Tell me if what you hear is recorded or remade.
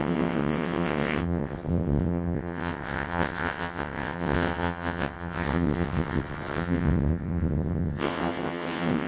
remade